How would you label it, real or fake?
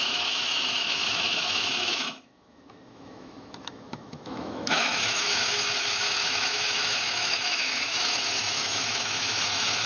fake